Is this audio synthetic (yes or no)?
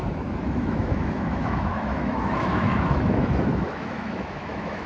yes